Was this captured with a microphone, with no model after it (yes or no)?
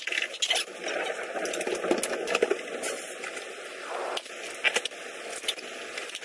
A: yes